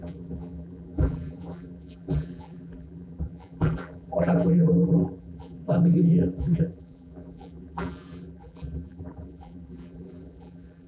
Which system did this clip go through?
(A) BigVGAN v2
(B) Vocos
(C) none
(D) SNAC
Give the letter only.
A